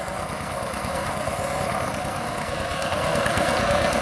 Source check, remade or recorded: remade